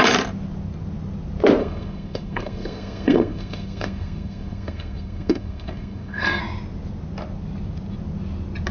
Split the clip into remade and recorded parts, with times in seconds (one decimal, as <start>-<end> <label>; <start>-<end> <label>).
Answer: 0.0-1.6 recorded; 1.6-6.4 remade; 6.4-8.7 recorded